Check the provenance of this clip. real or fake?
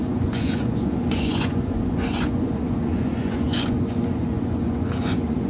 fake